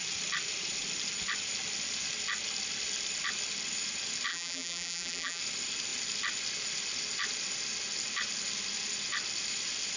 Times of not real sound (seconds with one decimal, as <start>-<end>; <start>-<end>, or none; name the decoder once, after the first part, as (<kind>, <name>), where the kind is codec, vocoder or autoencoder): 4.3-5.4 (vocoder, BigVGAN v2)